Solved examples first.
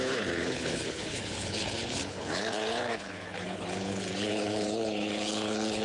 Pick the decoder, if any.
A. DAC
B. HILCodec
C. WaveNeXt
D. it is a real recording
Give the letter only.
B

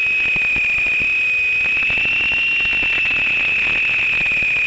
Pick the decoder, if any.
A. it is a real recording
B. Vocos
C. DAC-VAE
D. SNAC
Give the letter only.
A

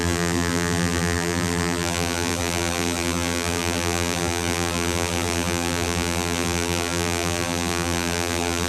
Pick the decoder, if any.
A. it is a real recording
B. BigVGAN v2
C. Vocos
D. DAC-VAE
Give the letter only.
B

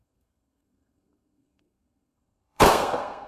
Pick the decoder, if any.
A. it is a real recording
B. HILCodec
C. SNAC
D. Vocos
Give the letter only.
C